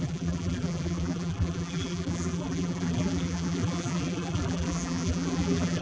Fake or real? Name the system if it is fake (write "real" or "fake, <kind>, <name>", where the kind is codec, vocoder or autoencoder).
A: fake, vocoder, BigVGAN v2